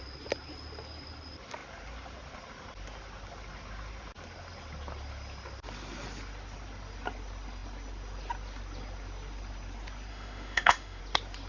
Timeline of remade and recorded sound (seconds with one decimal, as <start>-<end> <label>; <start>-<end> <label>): 0.0-10.1 recorded; 10.1-11.0 remade; 11.0-11.5 recorded